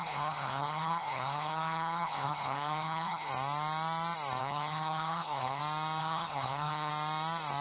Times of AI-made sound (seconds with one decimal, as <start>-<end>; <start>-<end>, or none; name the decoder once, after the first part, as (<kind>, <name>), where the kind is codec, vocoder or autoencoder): 0.0-3.3 (codec, HILCodec); 4.4-5.6; 6.0-6.9